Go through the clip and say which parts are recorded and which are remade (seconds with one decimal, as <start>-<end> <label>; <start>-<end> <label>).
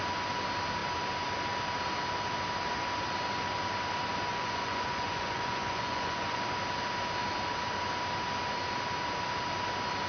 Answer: 0.0-4.3 recorded; 4.3-6.4 remade; 6.4-10.1 recorded